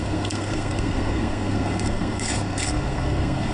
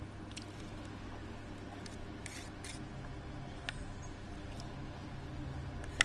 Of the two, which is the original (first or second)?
second